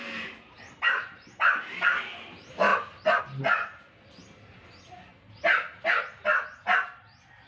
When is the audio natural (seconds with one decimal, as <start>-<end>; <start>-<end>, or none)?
0.0-7.5